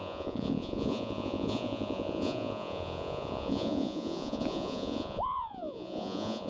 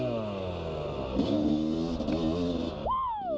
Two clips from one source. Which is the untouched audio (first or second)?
second